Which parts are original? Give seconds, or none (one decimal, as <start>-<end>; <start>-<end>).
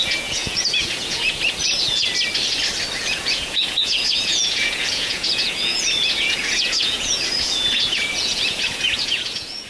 2.1-3.0